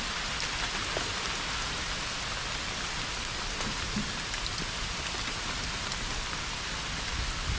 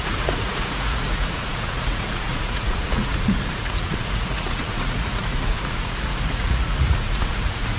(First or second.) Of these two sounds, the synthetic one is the second